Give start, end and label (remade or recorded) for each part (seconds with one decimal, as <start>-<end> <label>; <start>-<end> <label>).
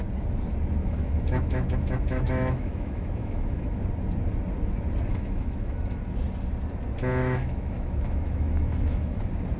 0.0-0.8 recorded; 0.8-3.8 remade; 3.8-5.1 recorded; 5.1-6.0 remade; 6.0-7.2 recorded; 7.2-9.2 remade; 9.2-9.6 recorded